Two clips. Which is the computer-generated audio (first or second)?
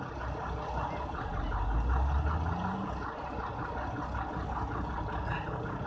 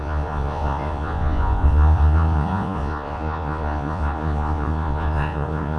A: second